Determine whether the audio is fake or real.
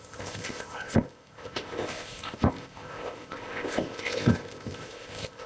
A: fake